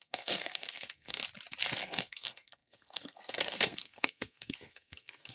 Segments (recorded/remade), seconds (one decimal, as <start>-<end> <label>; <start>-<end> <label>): 0.0-1.2 remade; 1.2-1.8 recorded; 1.8-5.3 remade